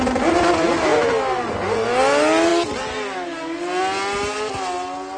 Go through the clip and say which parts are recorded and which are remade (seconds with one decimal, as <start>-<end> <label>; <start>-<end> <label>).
0.0-5.2 recorded